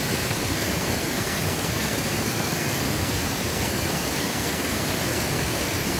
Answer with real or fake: fake